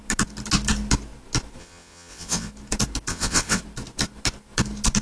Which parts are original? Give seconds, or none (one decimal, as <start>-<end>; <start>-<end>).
0.0-1.6; 2.5-3.1; 3.6-5.0